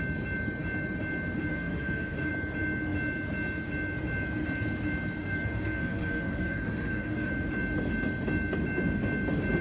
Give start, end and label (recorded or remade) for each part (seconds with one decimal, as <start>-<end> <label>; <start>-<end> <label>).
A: 0.0-1.5 recorded; 1.5-2.3 remade; 2.3-5.2 recorded; 5.2-7.3 remade; 7.3-9.6 recorded